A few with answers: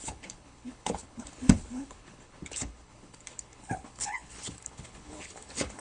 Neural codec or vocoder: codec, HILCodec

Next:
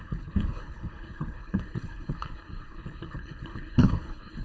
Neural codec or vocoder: codec, HILCodec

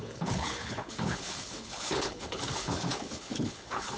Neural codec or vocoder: codec, HILCodec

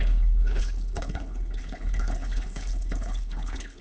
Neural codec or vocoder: codec, HILCodec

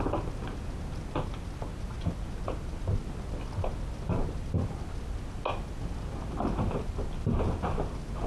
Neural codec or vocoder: none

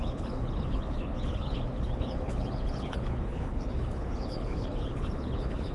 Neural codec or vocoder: codec, HILCodec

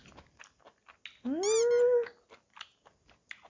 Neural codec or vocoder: none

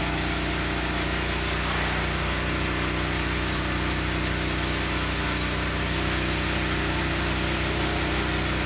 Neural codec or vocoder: none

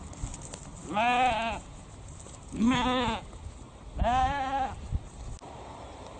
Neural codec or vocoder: none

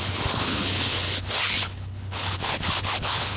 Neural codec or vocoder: codec, HILCodec